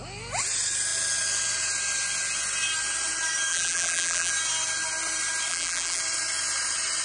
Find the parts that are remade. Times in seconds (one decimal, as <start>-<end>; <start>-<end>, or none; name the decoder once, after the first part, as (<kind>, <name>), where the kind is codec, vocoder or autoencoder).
3.5-4.3 (vocoder, BigVGAN v2); 5.5-6.0